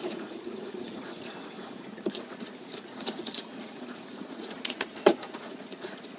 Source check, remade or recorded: remade